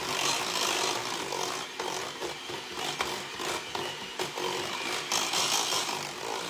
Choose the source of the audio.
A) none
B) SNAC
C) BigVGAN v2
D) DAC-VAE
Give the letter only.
A